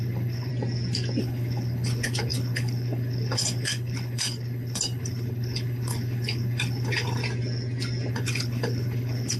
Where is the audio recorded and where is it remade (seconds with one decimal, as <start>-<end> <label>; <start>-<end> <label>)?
0.0-0.5 remade; 0.5-1.2 recorded; 1.2-7.2 remade; 7.2-8.1 recorded; 8.1-9.4 remade